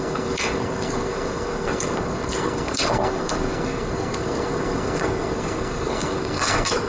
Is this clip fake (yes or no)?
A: yes